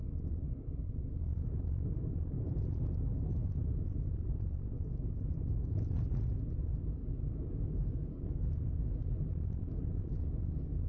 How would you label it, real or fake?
real